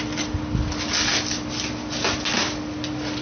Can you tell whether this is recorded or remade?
recorded